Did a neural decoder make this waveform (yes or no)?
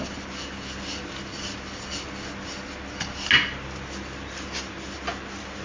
no